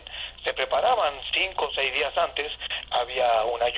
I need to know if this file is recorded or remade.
recorded